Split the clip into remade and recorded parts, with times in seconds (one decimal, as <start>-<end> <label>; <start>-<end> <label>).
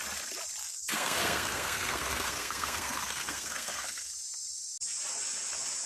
0.0-0.6 recorded; 0.6-4.1 remade; 4.1-5.9 recorded